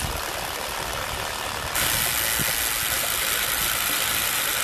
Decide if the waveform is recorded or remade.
recorded